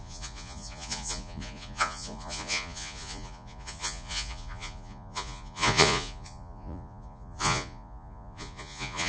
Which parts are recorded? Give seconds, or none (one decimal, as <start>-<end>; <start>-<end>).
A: none